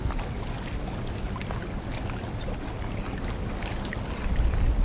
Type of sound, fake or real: real